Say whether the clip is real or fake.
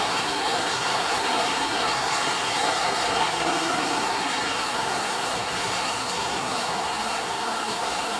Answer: fake